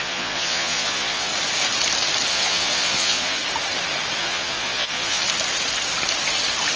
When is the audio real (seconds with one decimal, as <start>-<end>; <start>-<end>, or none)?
1.3-2.3; 3.4-4.2; 5.2-6.8